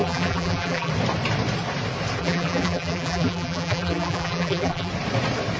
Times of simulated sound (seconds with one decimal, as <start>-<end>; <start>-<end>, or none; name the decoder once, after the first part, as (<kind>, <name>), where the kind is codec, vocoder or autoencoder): 0.0-0.9 (vocoder, BigVGAN v2); 2.2-4.9